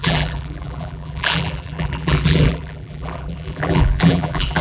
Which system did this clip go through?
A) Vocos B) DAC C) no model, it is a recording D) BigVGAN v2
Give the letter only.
D